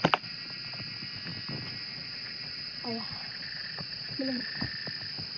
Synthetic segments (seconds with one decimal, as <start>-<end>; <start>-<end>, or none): 1.9-4.7